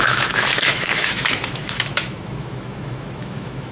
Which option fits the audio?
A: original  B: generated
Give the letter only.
B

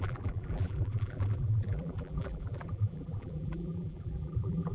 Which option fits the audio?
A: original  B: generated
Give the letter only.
B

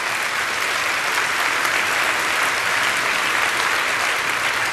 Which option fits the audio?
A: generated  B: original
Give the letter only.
B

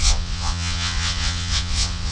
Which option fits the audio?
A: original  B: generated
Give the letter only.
B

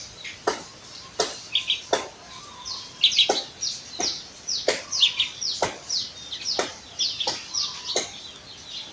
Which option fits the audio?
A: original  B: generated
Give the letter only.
A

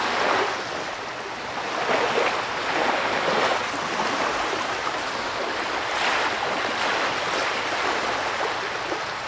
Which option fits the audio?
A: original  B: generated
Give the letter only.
A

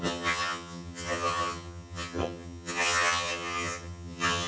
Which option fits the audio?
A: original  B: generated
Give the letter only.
B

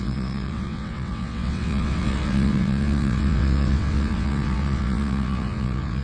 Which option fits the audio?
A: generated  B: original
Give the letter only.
A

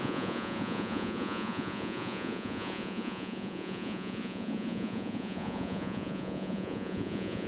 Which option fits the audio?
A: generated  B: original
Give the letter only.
A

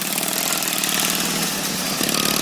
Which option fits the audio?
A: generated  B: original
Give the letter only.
B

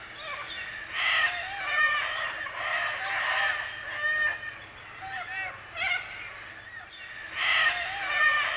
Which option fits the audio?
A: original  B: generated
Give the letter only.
A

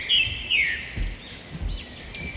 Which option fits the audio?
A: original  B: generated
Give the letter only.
A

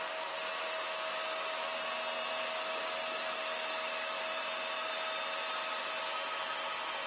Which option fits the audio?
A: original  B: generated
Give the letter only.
A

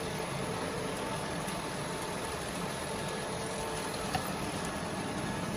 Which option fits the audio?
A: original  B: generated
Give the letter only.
B